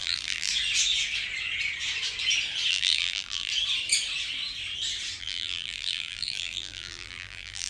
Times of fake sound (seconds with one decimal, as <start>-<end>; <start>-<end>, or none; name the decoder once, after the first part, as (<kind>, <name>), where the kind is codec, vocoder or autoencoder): 0.0-0.5 (vocoder, BigVGAN v2); 2.7-3.5; 5.2-7.7